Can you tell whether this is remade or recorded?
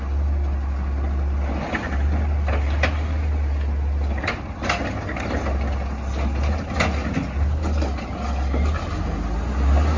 recorded